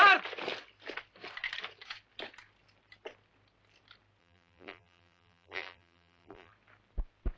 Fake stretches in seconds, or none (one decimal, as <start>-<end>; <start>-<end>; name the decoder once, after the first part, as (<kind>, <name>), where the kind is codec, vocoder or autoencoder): 4.2-6.5 (vocoder, BigVGAN v2)